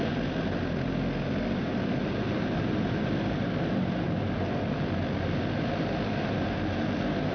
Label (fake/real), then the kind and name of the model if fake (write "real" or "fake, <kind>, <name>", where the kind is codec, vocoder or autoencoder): real